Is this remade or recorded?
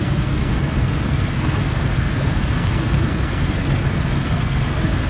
remade